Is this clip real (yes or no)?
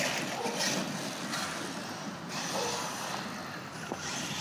yes